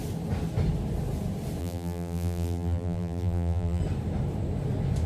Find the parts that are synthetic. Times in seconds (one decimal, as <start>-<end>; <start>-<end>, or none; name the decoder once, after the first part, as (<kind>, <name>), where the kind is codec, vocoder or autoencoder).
1.6-3.8 (vocoder, BigVGAN v2)